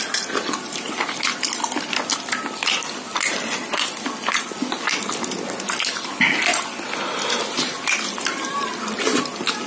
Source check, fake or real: real